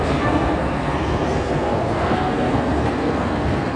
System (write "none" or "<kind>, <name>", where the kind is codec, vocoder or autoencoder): codec, SNAC